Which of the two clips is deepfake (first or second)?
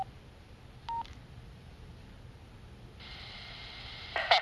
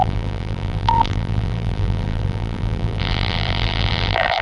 second